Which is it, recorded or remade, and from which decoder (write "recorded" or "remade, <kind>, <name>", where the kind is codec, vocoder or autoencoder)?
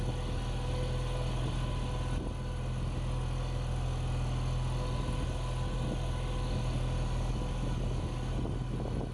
recorded